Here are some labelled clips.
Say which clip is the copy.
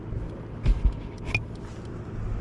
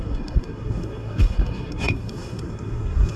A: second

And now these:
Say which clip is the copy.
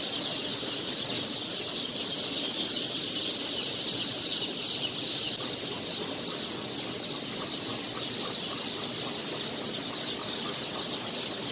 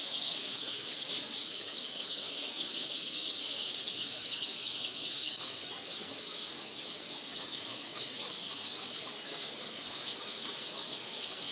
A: second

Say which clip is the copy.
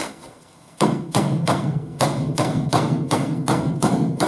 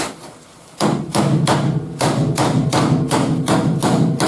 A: first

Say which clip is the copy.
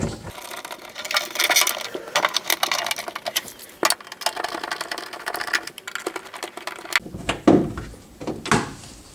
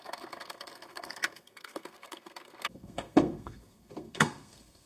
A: second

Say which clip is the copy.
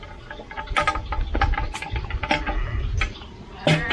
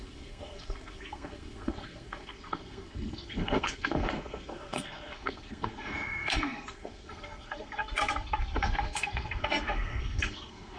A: second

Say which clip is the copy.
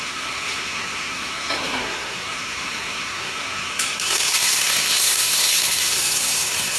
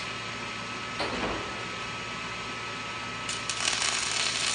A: first